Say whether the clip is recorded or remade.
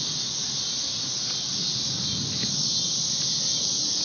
recorded